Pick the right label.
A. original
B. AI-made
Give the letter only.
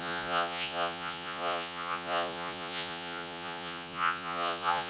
B